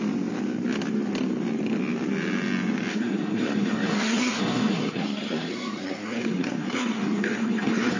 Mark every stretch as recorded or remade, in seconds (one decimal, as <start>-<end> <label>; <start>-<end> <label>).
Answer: 0.0-2.9 recorded; 2.9-8.0 remade